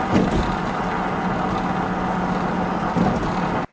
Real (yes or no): yes